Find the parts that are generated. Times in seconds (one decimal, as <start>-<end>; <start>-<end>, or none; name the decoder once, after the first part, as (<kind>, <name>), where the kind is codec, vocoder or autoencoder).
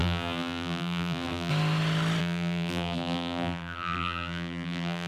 0.0-1.5 (vocoder, BigVGAN v2); 2.2-5.1